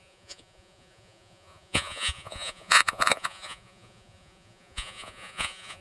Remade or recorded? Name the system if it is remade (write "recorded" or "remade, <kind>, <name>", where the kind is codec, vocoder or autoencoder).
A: remade, vocoder, Vocos